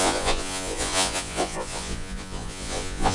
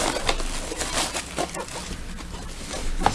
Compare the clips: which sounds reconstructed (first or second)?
first